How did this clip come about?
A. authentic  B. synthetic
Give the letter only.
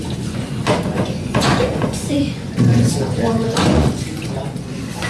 B